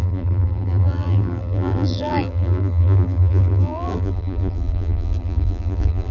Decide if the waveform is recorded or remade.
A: remade